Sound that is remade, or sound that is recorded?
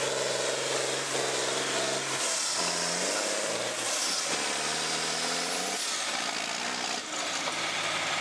recorded